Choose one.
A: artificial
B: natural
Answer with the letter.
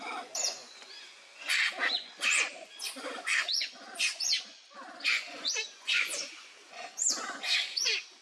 A